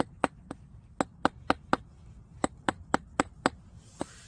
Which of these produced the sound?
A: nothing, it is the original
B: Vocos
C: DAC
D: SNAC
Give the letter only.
A